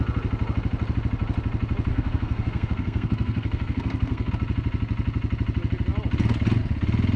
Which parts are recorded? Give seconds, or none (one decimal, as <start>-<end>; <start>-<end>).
0.0-1.9; 4.3-7.2